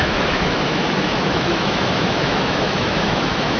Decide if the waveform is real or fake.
fake